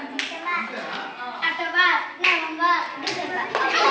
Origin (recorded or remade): recorded